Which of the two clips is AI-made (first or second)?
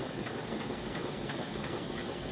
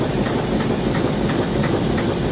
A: first